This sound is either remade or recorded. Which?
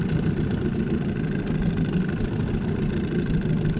recorded